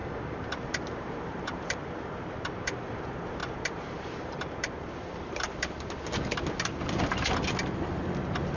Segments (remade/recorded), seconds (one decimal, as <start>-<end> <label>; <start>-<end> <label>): 0.0-3.0 remade; 3.0-3.4 recorded; 3.4-5.7 remade; 5.7-8.6 recorded